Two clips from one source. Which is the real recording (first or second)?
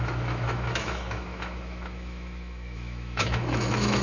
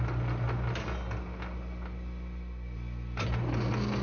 second